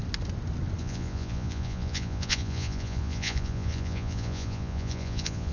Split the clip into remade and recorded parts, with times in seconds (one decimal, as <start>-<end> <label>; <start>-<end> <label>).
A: 0.0-0.8 recorded; 0.8-5.5 remade